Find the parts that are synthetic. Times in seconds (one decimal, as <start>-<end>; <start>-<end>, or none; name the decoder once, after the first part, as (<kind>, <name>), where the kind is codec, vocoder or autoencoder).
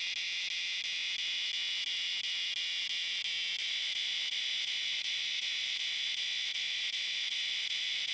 3.6-8.1 (vocoder, Vocos)